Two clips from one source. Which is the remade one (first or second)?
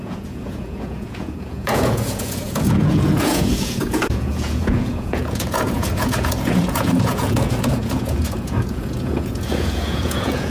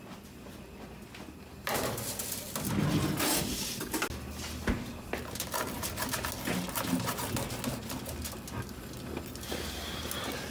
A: first